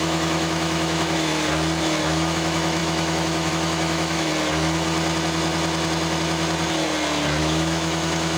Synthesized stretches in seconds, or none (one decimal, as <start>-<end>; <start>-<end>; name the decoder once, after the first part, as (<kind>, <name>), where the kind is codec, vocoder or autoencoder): 0.0-1.3 (autoencoder, DAC-VAE); 2.0-4.3; 7.4-8.4